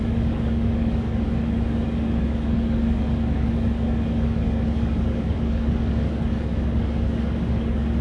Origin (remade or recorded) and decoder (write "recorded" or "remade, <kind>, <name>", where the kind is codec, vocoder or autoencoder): remade, codec, DAC